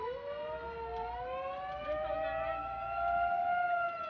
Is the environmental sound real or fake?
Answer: real